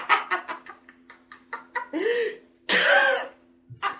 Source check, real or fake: real